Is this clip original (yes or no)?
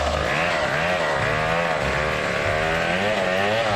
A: yes